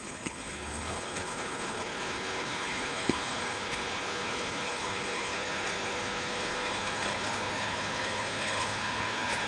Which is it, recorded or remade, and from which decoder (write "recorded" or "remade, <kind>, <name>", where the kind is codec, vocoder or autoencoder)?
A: remade, codec, HILCodec